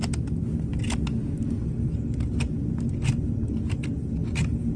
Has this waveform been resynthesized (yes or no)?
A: no